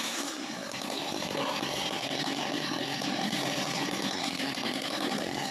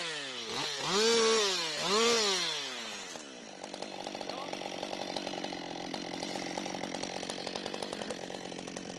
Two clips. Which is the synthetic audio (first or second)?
first